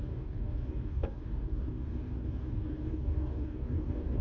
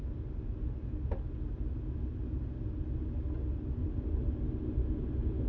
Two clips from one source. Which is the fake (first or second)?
first